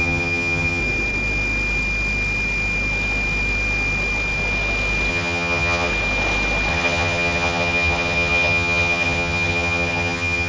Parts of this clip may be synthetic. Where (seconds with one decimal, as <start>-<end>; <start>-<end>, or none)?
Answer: 0.0-0.8; 5.1-5.9; 6.7-10.5